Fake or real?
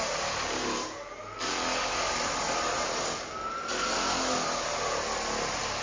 real